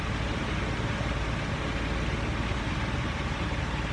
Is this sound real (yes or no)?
yes